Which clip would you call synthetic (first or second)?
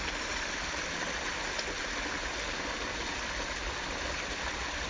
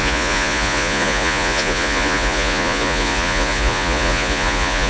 second